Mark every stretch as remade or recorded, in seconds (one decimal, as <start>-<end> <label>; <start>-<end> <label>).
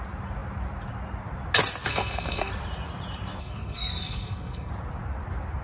0.0-1.9 recorded; 1.9-2.5 remade; 2.5-3.4 recorded; 3.4-4.7 remade; 4.7-5.6 recorded